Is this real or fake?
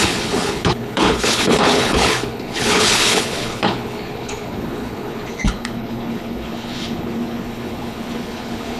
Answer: fake